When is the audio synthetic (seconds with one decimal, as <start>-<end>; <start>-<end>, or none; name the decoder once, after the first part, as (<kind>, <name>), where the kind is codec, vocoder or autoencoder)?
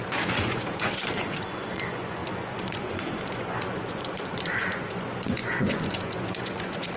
0.0-7.0 (vocoder, Vocos)